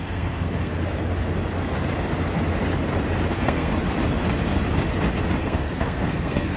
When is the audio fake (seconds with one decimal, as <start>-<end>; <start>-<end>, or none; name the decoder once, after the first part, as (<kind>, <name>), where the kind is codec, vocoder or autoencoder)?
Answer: 0.0-0.7 (codec, SNAC); 3.3-3.7; 5.4-6.6